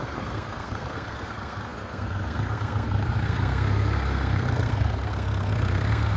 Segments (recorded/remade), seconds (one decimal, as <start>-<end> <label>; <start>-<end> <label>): 0.0-6.2 remade